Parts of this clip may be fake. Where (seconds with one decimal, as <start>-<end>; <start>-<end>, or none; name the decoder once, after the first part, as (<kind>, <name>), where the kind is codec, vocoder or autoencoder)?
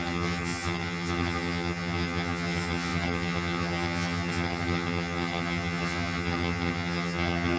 0.0-7.6 (vocoder, HiFi-GAN)